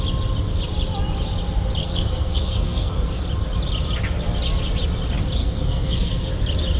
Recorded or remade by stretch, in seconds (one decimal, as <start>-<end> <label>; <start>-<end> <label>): 0.0-1.8 recorded; 1.8-3.2 remade; 3.2-5.4 recorded; 5.4-6.3 remade; 6.3-6.8 recorded